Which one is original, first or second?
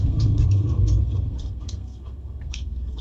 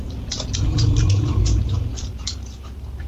second